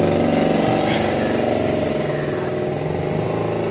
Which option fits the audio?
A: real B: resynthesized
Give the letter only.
A